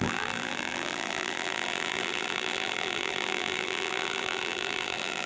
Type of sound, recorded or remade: remade